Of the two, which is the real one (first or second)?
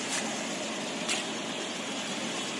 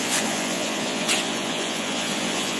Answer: first